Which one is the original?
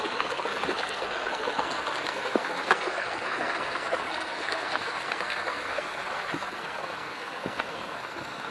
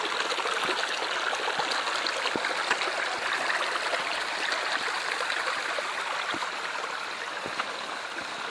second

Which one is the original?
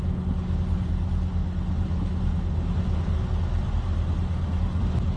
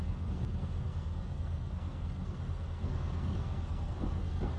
first